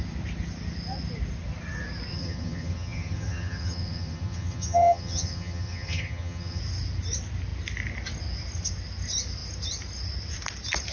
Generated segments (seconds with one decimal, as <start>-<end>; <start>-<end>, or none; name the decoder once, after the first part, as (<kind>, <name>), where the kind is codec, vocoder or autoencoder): 2.1-6.6 (vocoder, HiFi-GAN)